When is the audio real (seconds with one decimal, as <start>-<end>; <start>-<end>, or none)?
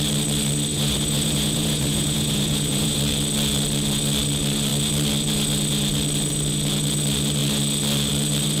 0.0-0.7; 3.0-8.6